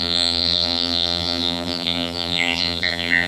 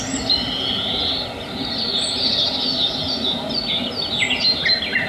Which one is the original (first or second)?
second